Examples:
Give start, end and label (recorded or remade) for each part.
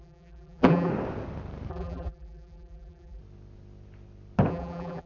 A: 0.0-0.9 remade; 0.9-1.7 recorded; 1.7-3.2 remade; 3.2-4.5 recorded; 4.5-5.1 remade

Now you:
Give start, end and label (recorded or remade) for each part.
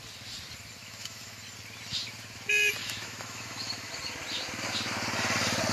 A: 0.0-0.8 recorded; 0.8-1.4 remade; 1.4-2.8 recorded; 2.8-3.9 remade; 3.9-5.7 recorded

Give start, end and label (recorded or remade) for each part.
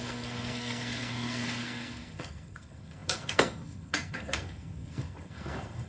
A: 0.0-5.9 remade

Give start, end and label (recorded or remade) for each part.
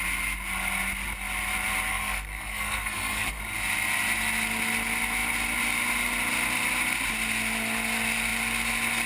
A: 0.0-1.9 recorded; 1.9-3.4 remade; 3.4-9.1 recorded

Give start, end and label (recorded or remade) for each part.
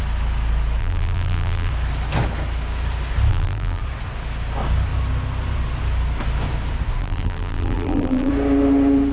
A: 0.0-0.8 recorded; 0.8-1.7 remade; 1.7-3.3 recorded; 3.3-3.8 remade; 3.8-7.0 recorded; 7.0-8.3 remade; 8.3-9.1 recorded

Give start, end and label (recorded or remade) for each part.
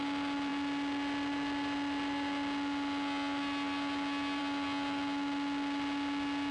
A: 0.0-6.5 recorded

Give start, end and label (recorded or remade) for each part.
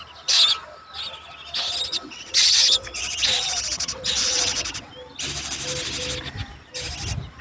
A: 0.0-1.9 recorded; 1.9-4.9 remade; 4.9-7.4 recorded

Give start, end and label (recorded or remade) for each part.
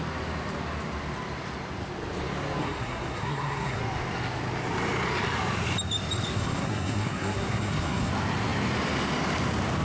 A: 0.0-2.6 recorded; 2.6-3.8 remade; 3.8-6.3 recorded; 6.3-8.1 remade; 8.1-9.8 recorded